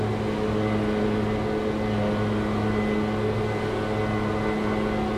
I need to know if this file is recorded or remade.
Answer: recorded